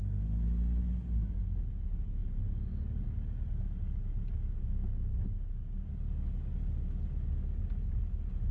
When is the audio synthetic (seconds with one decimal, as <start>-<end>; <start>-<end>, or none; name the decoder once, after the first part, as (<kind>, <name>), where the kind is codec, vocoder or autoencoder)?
none